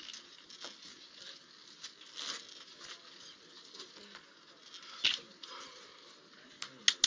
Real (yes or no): yes